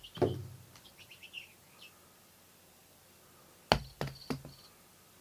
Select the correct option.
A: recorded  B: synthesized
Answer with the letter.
A